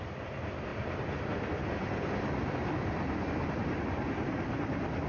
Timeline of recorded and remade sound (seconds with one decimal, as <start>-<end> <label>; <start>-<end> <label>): 0.0-5.1 recorded